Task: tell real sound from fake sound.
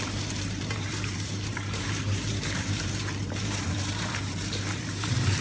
fake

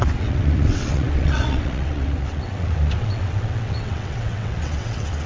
fake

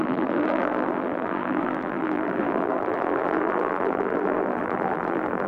fake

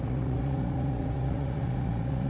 fake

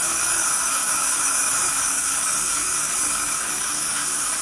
fake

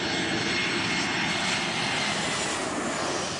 real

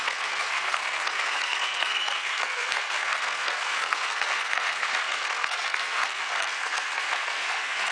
fake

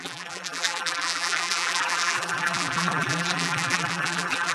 fake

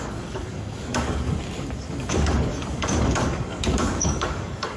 fake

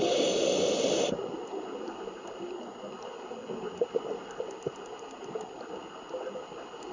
real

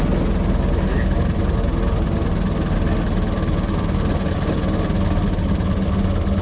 real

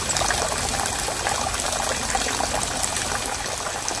real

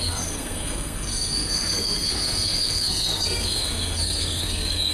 fake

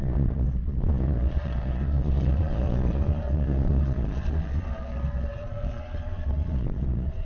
fake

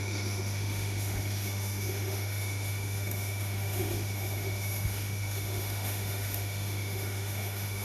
fake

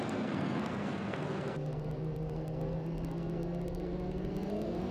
fake